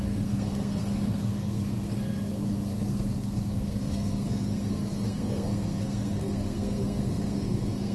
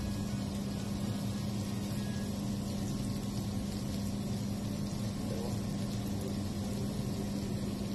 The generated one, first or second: first